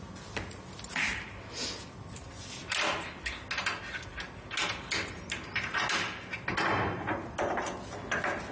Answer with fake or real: real